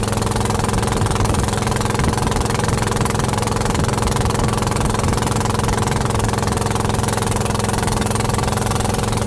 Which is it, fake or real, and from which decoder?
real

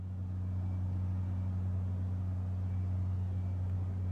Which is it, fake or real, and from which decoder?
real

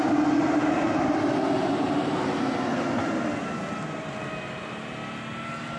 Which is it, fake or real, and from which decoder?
real